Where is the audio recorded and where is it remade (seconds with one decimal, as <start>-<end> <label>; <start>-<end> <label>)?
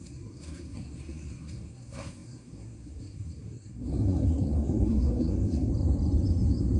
0.0-5.7 remade; 5.7-6.8 recorded